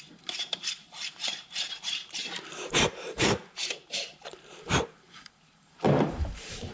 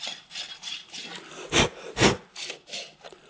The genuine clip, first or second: second